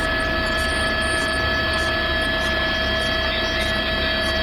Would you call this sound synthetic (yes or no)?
no